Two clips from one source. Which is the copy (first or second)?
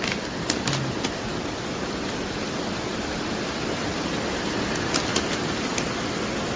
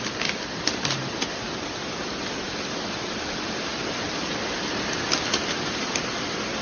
second